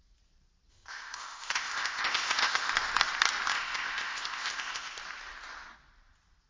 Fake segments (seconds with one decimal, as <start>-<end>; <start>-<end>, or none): 0.7-2.7; 3.5-4.9